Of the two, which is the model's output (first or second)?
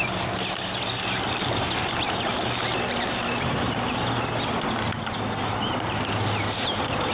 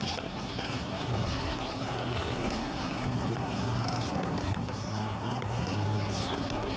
second